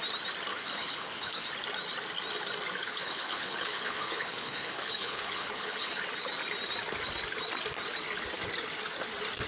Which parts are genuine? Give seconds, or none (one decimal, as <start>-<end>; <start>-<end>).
0.0-0.5; 1.5-2.8; 6.0-9.5